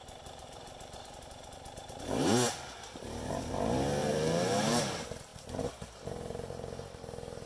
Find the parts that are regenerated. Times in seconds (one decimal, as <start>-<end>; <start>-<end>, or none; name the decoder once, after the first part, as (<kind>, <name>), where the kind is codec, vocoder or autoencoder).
0.0-3.5 (vocoder, BigVGAN v2); 4.0-4.8; 5.3-6.1